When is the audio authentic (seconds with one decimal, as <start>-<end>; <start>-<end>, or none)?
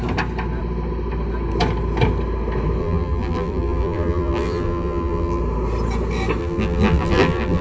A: 0.0-2.8; 5.4-6.4